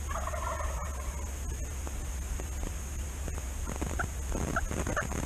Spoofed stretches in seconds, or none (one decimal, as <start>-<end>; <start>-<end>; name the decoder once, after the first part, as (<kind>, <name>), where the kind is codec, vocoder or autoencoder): none